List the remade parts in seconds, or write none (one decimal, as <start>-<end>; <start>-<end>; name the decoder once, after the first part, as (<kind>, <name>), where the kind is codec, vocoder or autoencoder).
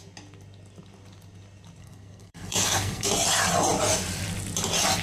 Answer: 1.8-3.1 (codec, SNAC)